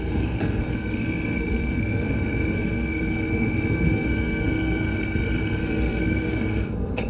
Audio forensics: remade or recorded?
remade